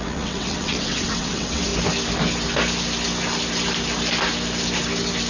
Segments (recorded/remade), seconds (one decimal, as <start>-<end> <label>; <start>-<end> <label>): 0.0-1.7 remade; 1.7-5.3 recorded